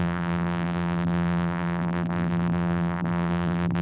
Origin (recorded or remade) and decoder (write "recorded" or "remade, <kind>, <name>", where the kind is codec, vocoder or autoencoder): remade, vocoder, BigVGAN v2